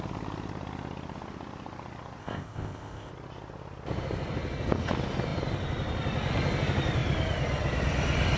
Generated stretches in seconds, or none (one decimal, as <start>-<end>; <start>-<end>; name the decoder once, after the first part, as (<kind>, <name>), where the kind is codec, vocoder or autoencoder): 2.2-3.1 (codec, ZipCodec)